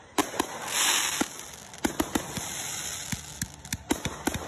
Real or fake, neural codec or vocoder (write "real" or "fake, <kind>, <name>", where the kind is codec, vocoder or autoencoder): real